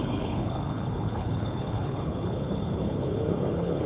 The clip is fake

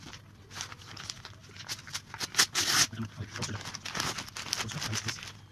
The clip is real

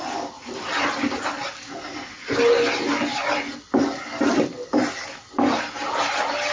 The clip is real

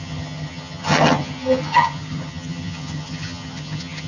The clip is fake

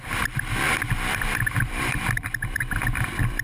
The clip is fake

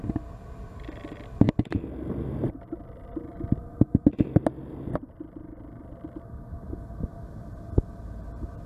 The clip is real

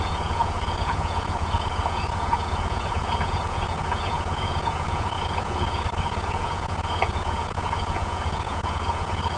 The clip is fake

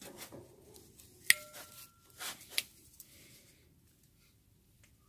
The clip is real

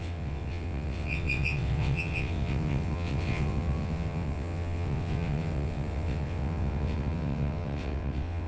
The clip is fake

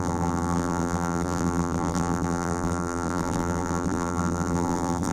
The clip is fake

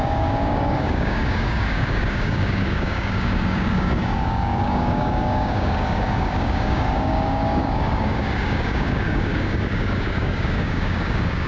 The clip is fake